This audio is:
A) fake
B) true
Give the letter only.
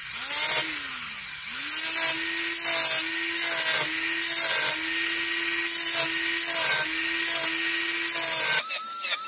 B